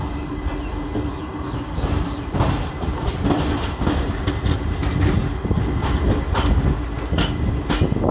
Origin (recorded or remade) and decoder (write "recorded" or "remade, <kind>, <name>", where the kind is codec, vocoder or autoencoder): recorded